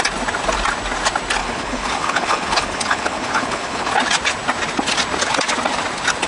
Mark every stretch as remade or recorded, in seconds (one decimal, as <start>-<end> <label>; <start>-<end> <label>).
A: 0.0-1.4 recorded; 1.4-3.9 remade; 3.9-6.3 recorded